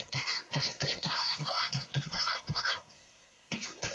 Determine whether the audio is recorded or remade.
remade